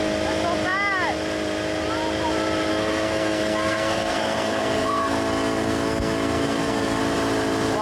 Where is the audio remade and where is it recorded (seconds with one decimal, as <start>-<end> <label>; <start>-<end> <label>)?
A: 0.0-2.7 recorded; 2.7-7.0 remade; 7.0-7.8 recorded